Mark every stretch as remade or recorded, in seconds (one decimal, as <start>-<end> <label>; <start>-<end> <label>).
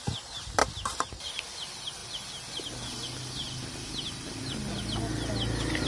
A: 0.0-5.9 recorded